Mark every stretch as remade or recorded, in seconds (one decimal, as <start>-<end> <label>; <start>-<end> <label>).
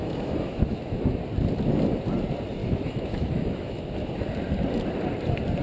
0.0-1.2 remade; 1.2-2.6 recorded; 2.6-3.9 remade; 3.9-5.6 recorded